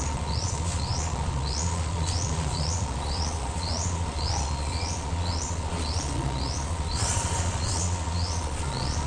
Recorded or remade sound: remade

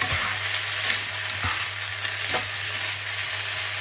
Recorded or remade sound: recorded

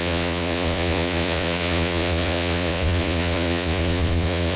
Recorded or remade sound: remade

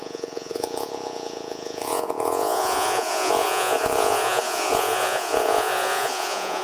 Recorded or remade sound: remade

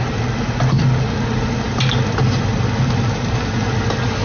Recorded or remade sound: recorded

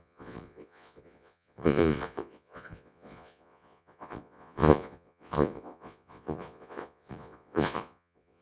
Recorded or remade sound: remade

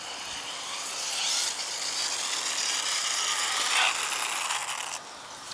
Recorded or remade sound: recorded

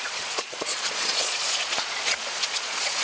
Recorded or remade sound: remade